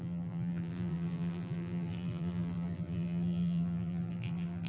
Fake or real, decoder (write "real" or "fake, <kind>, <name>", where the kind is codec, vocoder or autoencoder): fake, vocoder, BigVGAN v2